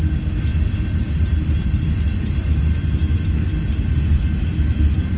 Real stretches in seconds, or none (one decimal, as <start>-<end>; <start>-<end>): 0.0-0.5; 3.6-5.2